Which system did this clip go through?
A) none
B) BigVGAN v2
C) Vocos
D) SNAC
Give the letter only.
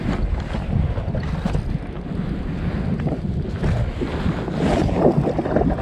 A